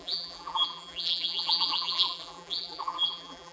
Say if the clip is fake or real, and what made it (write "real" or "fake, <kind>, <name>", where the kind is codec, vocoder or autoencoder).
fake, vocoder, BigVGAN v2